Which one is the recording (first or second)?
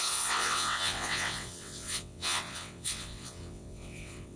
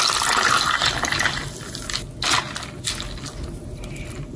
second